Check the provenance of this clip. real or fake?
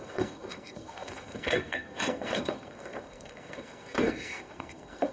fake